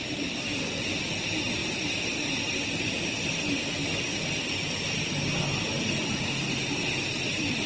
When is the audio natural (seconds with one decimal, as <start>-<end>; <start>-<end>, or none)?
0.0-7.7